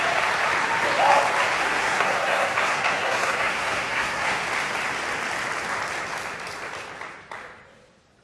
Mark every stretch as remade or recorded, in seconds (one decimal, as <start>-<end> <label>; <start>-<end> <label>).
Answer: 0.0-1.6 recorded; 1.6-4.4 remade; 4.4-8.2 recorded